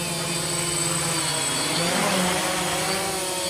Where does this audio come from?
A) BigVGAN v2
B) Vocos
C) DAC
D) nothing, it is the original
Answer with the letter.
D